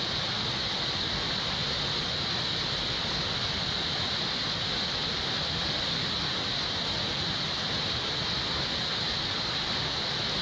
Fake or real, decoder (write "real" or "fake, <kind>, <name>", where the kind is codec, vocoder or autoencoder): real